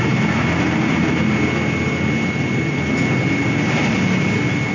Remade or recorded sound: recorded